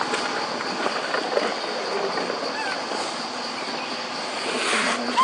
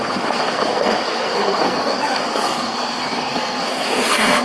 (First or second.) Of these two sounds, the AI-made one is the second